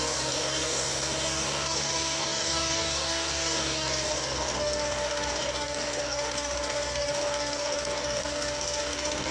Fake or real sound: fake